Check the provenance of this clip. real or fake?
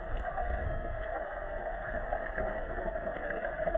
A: fake